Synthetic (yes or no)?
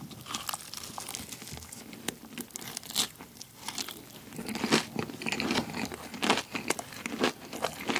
no